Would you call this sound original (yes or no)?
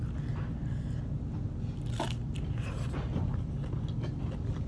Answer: yes